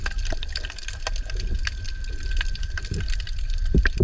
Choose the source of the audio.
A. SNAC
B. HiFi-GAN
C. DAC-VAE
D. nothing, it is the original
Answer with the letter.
D